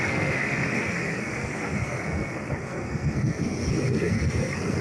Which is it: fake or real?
fake